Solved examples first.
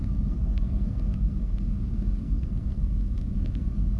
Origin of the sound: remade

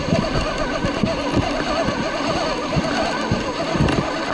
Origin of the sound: recorded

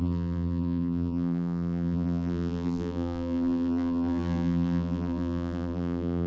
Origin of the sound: remade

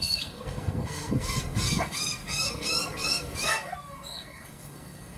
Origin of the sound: remade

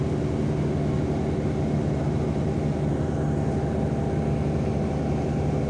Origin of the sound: recorded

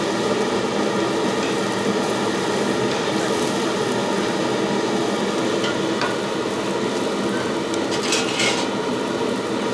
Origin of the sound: recorded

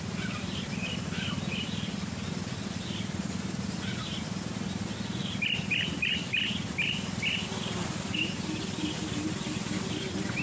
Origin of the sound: recorded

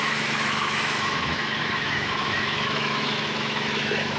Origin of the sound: remade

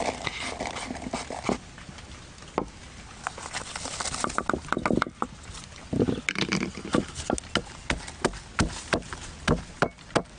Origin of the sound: recorded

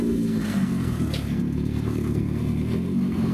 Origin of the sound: remade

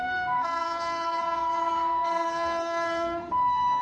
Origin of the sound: remade